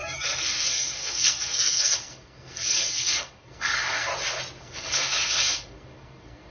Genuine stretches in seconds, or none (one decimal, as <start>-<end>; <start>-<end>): 4.1-4.6

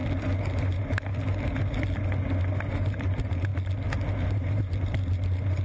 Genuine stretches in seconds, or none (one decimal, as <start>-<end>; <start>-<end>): 0.0-0.5; 1.1-2.7; 3.5-4.3